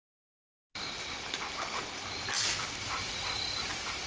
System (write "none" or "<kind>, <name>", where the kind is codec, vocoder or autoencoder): none